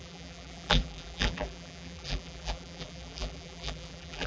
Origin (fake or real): fake